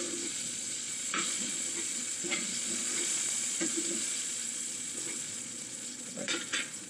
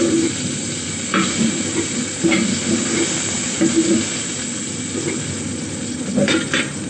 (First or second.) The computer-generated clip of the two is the first